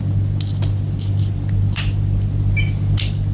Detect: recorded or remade recorded